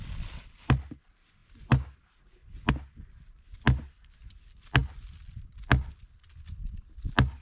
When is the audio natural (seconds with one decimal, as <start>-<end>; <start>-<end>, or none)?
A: 0.0-7.4